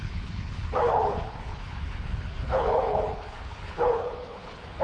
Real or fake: fake